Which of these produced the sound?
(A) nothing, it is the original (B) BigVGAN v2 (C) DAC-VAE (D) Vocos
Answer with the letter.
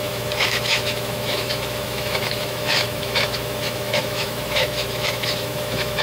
C